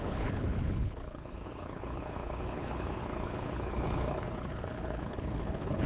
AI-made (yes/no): yes